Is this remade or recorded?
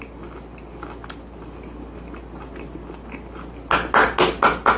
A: recorded